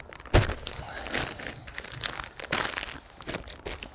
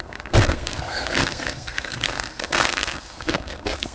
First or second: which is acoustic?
first